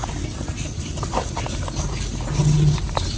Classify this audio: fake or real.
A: real